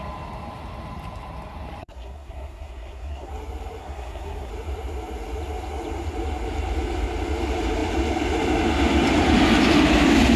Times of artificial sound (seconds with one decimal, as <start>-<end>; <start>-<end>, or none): 1.8-3.3; 3.8-4.5